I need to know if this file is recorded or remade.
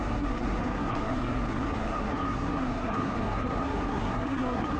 remade